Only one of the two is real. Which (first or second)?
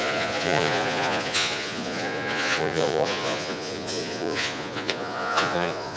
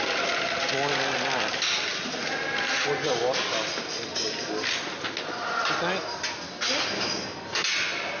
second